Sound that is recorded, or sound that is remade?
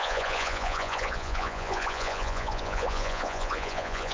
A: remade